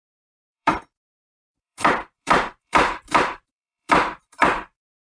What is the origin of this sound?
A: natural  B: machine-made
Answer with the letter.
B